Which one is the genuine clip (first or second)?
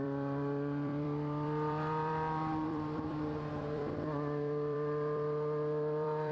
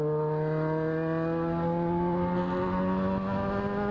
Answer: second